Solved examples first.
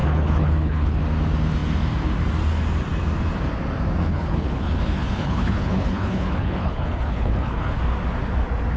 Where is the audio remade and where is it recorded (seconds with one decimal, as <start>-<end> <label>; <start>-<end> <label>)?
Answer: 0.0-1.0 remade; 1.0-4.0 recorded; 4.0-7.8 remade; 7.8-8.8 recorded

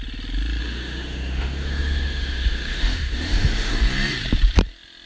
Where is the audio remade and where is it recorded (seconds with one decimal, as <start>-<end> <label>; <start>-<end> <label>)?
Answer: 0.0-0.6 recorded; 0.6-3.7 remade; 3.7-5.1 recorded

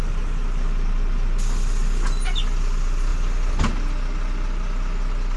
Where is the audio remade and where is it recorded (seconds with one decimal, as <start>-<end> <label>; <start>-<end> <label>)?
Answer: 0.0-5.4 recorded